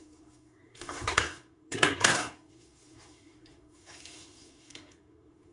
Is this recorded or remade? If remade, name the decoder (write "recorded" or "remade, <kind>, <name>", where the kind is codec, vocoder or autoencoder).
remade, codec, SNAC